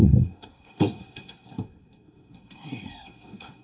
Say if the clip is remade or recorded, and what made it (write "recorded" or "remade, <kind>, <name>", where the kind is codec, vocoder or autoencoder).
remade, codec, SNAC